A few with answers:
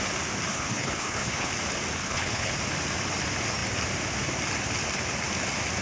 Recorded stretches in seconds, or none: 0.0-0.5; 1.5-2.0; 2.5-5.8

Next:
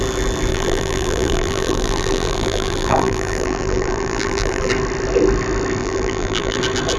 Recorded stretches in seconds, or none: 0.0-0.5; 4.7-5.8; 6.6-7.0

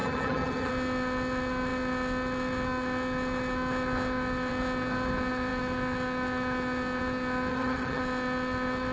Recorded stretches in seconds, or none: 0.7-7.5; 8.0-8.9

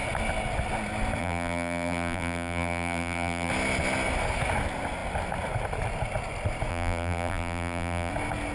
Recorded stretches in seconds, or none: 0.0-1.2; 3.5-6.7; 8.1-8.5

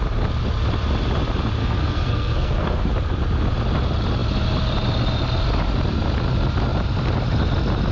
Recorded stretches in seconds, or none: 0.0-1.6; 2.9-7.9

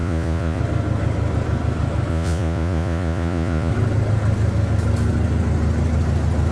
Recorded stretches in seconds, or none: 0.6-2.1; 3.7-6.5

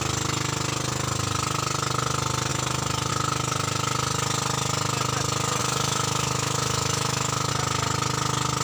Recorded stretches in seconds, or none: 0.0-2.5; 3.1-5.6; 7.5-8.6

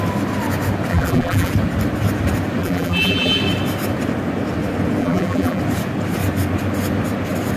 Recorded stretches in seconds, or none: 0.0-0.9; 1.5-2.6; 3.4-5.0; 5.6-7.6